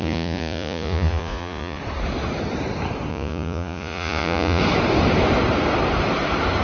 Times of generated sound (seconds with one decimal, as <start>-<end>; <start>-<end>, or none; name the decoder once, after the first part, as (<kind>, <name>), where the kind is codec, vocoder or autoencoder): 0.0-1.8 (vocoder, Vocos); 3.1-4.6